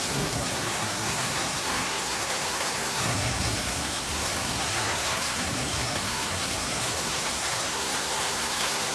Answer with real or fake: fake